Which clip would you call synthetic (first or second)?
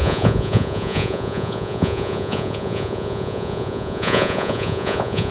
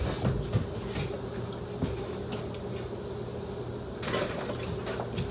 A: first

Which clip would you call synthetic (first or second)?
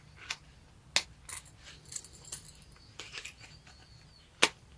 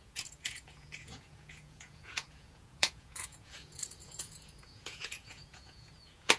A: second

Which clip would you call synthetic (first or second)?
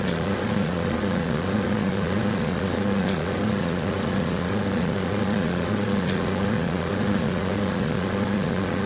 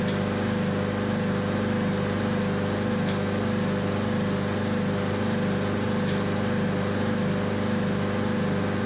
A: first